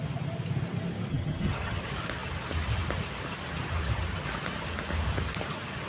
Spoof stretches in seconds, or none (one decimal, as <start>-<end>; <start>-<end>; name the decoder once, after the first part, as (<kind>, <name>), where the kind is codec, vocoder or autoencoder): 1.1-1.8 (vocoder, HiFi-GAN)